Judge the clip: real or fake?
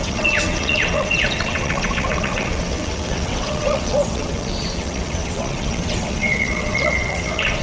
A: fake